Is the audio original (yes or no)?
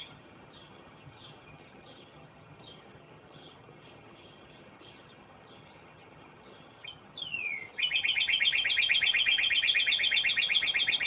no